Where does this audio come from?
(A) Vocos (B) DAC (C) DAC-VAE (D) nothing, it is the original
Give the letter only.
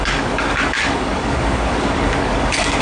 B